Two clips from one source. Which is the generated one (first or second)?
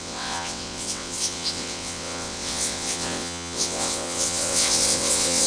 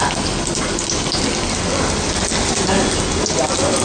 first